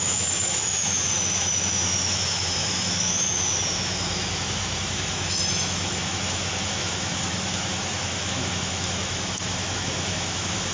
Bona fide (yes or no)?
no